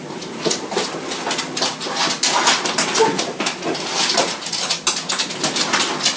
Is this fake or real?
real